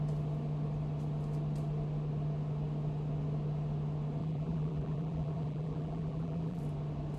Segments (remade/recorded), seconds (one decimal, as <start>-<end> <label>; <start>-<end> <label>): 0.0-4.2 recorded; 4.2-6.6 remade; 6.6-7.2 recorded